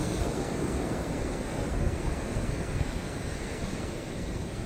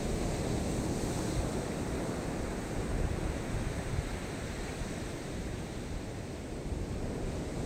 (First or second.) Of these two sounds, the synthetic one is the first